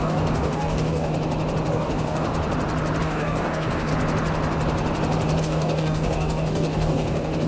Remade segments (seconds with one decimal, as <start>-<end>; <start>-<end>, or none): 0.0-1.1; 1.7-2.3; 3.0-3.9; 5.4-7.5